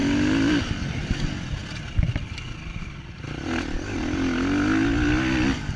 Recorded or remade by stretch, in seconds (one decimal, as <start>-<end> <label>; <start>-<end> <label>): 0.0-5.8 recorded